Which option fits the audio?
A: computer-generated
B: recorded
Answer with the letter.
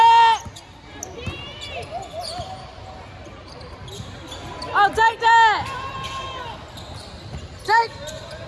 B